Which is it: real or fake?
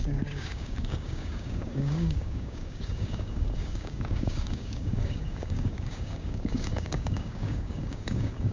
fake